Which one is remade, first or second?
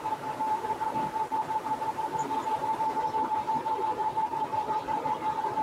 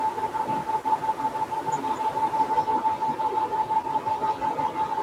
first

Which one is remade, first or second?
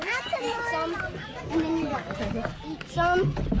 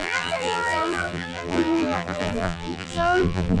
second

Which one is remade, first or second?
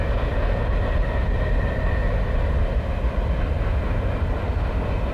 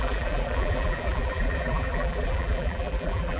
second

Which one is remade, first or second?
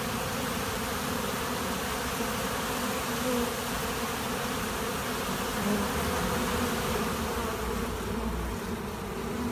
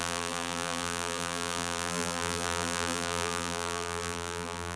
second